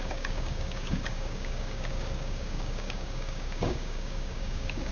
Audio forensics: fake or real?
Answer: fake